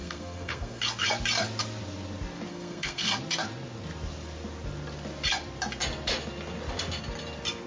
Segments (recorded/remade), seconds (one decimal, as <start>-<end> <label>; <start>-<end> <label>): 0.0-0.8 remade; 0.8-2.5 recorded; 2.5-3.2 remade; 3.2-7.7 recorded